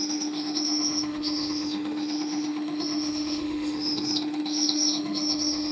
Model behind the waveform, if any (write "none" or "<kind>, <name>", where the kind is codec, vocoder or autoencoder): autoencoder, DAC-VAE